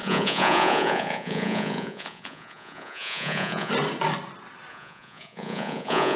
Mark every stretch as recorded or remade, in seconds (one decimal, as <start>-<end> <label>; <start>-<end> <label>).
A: 0.0-3.7 remade; 3.7-4.7 recorded; 4.7-6.2 remade